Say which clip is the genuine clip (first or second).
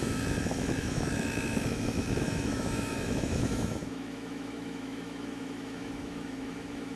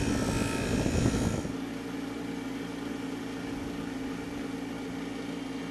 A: second